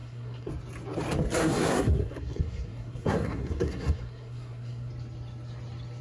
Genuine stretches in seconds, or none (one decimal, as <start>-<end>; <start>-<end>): 0.5-1.4; 4.9-6.0